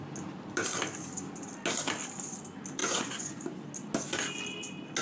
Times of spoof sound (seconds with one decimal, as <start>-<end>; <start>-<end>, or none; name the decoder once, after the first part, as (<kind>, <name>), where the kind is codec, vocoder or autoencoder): 2.8-3.4 (vocoder, Vocos)